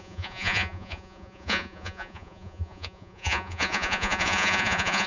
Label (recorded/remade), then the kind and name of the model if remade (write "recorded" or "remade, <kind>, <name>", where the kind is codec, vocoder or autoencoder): remade, vocoder, Vocos